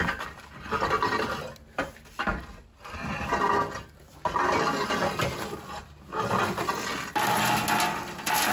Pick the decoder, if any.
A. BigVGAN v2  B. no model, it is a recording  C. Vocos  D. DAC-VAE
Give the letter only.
B